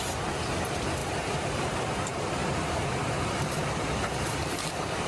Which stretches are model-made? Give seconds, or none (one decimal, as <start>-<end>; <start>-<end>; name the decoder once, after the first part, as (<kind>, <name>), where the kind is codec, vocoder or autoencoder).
0.0-5.1 (vocoder, BigVGAN v2)